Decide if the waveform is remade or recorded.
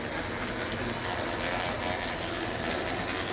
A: recorded